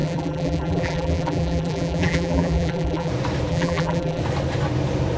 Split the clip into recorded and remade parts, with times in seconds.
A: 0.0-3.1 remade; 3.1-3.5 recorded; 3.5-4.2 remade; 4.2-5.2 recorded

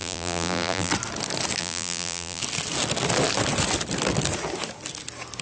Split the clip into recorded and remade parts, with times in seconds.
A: 0.0-0.9 remade; 0.9-1.6 recorded; 1.6-2.4 remade; 2.4-5.4 recorded

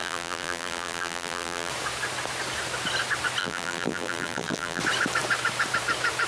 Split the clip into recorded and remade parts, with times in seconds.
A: 0.0-1.7 remade; 1.7-3.4 recorded; 3.4-4.8 remade; 4.8-6.3 recorded

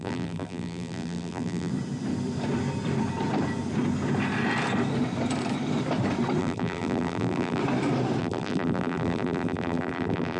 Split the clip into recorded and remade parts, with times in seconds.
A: 0.0-1.7 remade; 1.7-6.4 recorded; 6.4-7.6 remade; 7.6-8.2 recorded; 8.2-10.4 remade

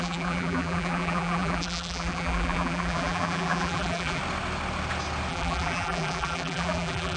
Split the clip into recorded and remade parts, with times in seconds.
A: 0.0-4.2 remade; 4.2-5.3 recorded; 5.3-7.2 remade

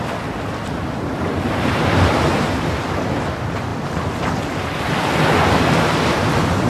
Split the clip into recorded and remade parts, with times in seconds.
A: 0.0-1.2 recorded; 1.2-2.0 remade; 2.0-6.7 recorded

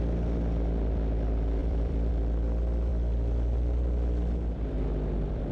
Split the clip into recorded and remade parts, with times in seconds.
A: 0.0-1.6 recorded; 1.6-2.1 remade; 2.1-2.9 recorded; 2.9-5.5 remade

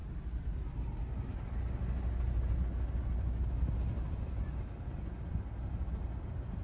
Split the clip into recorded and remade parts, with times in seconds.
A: 0.0-6.6 recorded